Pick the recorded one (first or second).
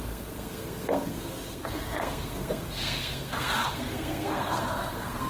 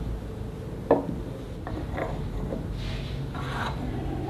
second